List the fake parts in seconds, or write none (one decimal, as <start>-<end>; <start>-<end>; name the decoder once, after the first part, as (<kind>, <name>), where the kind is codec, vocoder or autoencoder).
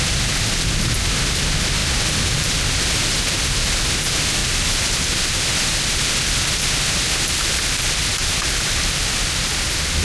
1.8-2.4 (vocoder, BigVGAN v2); 4.4-6.0; 8.1-9.5